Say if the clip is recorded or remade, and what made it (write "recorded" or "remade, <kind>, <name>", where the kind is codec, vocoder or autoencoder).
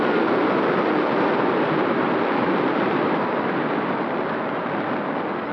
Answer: recorded